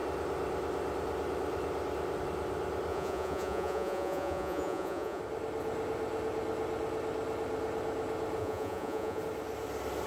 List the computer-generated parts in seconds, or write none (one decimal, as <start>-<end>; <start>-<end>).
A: 2.9-5.2; 8.4-9.2